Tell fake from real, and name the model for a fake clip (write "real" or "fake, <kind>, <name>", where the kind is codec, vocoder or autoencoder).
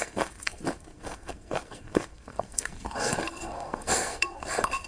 fake, codec, SNAC